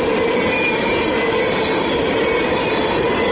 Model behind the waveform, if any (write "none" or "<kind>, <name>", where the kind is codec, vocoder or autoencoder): none